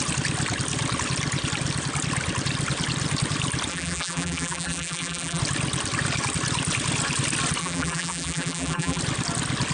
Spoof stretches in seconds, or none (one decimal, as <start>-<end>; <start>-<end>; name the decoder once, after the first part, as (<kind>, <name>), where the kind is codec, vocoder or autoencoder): 3.7-5.4 (vocoder, BigVGAN v2); 7.6-9.0